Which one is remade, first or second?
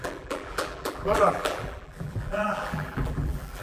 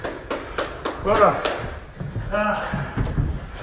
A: first